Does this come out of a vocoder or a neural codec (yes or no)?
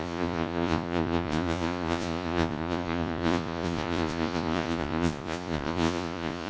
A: yes